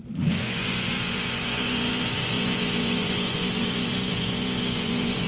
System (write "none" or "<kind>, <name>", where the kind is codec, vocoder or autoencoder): vocoder, Vocos